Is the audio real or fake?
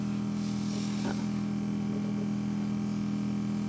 real